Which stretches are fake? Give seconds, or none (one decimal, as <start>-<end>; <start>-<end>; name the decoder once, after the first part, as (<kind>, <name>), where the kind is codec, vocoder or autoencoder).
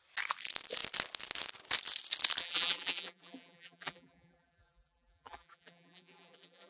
2.4-6.7 (vocoder, BigVGAN v2)